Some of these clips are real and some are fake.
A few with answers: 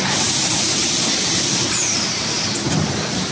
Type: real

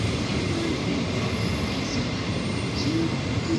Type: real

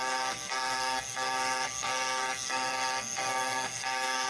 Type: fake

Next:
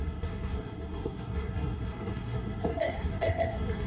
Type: fake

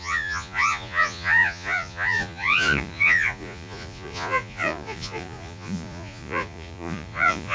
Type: fake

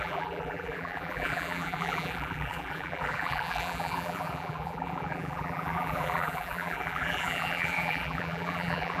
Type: fake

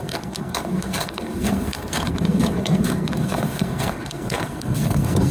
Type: fake